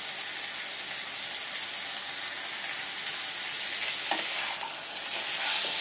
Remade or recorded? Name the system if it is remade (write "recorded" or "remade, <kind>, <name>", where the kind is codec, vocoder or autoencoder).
recorded